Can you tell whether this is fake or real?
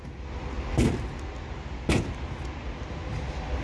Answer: real